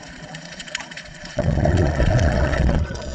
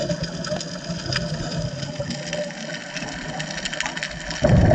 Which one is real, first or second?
second